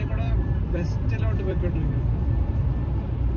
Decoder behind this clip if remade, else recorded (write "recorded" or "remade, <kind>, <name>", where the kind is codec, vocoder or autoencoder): remade, vocoder, BigVGAN v2